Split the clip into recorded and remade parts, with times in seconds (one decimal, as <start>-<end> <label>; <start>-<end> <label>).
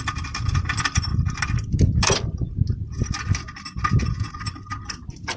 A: 0.0-1.1 remade; 1.1-4.3 recorded; 4.3-5.4 remade